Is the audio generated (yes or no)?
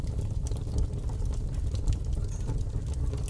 no